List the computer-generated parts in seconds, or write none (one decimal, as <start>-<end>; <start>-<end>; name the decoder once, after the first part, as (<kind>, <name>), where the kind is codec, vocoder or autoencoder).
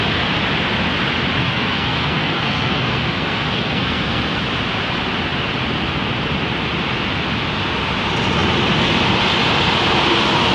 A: 1.4-4.4 (codec, SNAC)